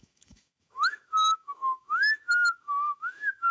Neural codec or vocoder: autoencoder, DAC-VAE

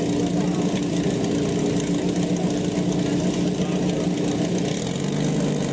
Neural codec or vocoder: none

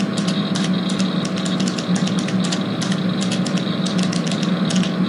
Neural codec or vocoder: none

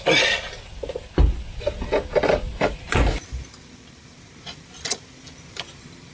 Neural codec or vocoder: none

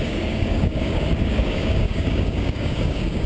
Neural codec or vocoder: codec, DAC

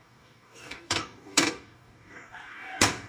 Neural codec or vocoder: codec, DAC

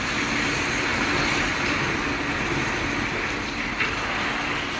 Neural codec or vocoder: none